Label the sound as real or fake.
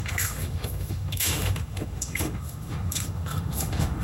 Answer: fake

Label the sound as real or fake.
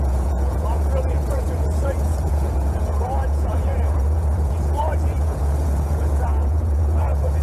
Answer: fake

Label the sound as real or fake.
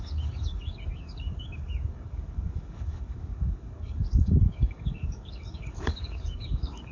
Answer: fake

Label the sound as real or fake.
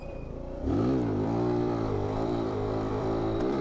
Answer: fake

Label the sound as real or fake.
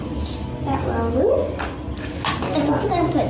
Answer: real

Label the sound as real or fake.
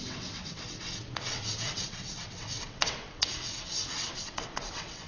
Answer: fake